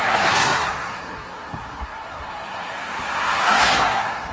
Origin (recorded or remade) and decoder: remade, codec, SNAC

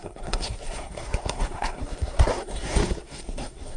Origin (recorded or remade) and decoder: remade, codec, SNAC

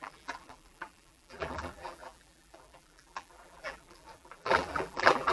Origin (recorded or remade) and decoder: remade, vocoder, BigVGAN v2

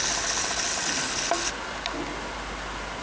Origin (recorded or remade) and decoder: recorded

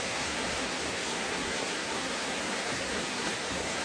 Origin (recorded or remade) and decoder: remade, codec, SNAC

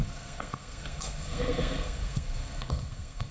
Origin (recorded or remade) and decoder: remade, codec, SNAC